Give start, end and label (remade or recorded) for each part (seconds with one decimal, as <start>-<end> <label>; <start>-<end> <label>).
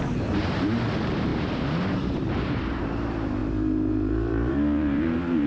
0.0-5.5 remade